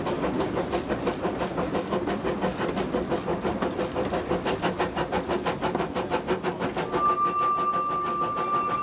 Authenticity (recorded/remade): recorded